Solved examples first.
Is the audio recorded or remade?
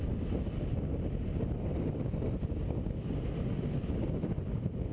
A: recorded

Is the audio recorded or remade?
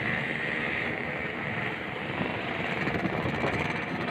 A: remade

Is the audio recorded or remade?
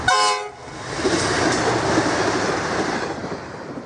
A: recorded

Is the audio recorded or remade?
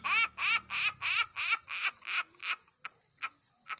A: recorded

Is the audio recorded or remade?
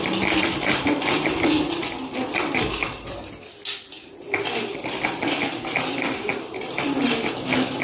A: recorded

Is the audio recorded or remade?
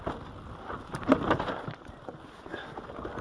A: recorded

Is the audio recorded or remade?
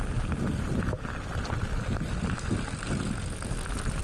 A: recorded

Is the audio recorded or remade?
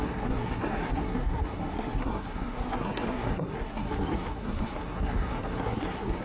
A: remade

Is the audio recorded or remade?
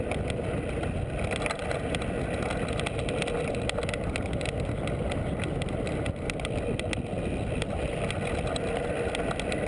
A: recorded